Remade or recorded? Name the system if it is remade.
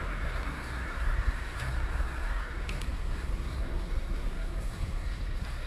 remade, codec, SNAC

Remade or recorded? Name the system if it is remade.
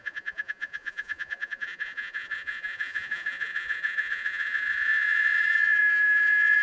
remade, vocoder, Vocos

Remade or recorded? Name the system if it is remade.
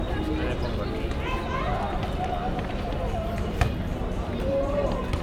recorded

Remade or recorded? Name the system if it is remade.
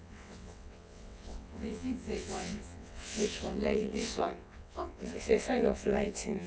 remade, vocoder, WaveNeXt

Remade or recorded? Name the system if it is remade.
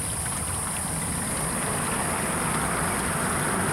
recorded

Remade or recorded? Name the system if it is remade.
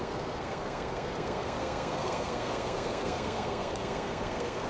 remade, codec, SNAC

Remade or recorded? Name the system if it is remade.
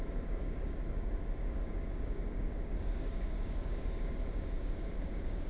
remade, codec, DAC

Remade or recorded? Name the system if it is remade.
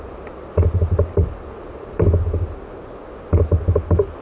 recorded